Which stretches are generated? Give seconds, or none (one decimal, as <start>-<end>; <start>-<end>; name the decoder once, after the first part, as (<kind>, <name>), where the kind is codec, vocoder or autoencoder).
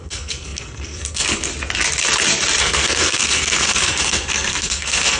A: 0.0-1.5 (codec, SNAC); 2.6-5.2